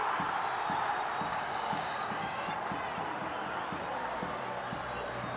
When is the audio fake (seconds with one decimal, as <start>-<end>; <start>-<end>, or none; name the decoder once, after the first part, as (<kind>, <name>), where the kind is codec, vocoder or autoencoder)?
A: 1.3-2.5 (codec, DAC)